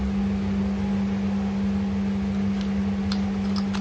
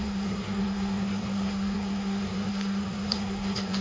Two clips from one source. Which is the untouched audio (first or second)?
first